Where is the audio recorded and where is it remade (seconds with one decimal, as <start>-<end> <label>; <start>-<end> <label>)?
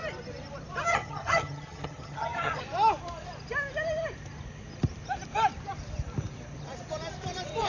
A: 0.0-0.9 recorded; 0.9-2.6 remade; 2.6-7.7 recorded